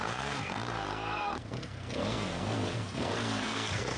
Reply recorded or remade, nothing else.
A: remade